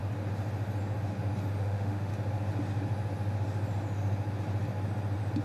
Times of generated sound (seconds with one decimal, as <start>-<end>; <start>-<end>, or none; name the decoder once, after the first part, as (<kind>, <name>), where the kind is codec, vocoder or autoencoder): 1.6-2.1 (autoencoder, DAC-VAE)